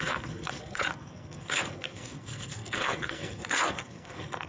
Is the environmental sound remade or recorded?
remade